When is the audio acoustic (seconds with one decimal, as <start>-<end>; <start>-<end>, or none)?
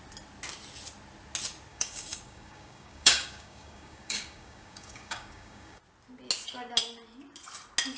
0.0-1.7; 5.8-8.0